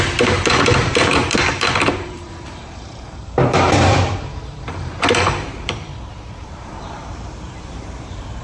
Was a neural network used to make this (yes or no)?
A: yes